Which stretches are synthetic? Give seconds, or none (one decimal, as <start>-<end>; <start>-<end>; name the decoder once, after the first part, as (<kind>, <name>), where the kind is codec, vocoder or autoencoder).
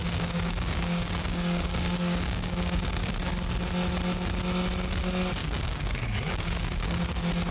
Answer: 0.0-3.3 (codec, DAC); 5.4-7.0